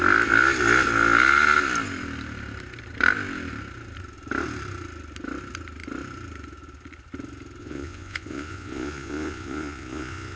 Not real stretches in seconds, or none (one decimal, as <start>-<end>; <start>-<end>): 7.6-10.4